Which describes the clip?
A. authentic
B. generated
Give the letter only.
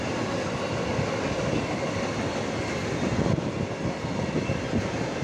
A